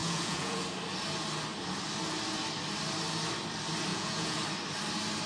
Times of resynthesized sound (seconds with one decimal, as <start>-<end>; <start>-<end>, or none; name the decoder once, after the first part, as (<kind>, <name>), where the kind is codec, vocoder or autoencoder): 0.0-0.6 (vocoder, Vocos); 3.9-4.4